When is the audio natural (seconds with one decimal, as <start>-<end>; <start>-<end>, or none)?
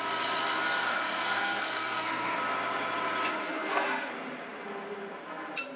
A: 0.0-0.8; 2.4-3.4; 4.1-5.8